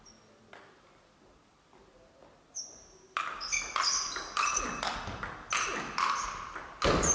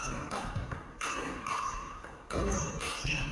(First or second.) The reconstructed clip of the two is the second